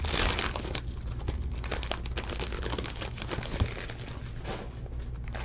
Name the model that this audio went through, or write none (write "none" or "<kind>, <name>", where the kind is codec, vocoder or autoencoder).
none